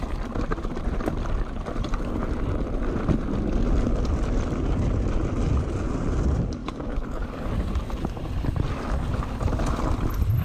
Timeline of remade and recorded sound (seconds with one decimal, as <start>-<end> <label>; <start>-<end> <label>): 0.0-6.6 recorded; 6.6-7.5 remade; 7.5-10.4 recorded